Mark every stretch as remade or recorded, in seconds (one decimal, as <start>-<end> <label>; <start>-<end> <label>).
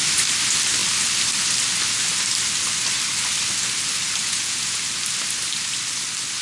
0.0-4.2 recorded; 4.2-4.8 remade; 4.8-6.4 recorded